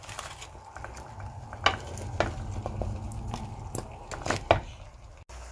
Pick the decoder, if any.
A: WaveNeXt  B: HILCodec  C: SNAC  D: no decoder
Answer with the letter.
D